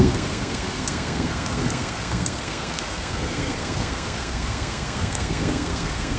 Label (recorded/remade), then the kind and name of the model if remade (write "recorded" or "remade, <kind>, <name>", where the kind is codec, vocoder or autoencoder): remade, codec, SNAC